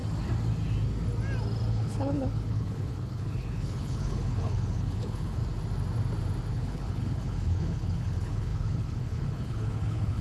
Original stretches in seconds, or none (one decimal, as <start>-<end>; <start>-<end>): 0.0-1.7; 5.4-6.5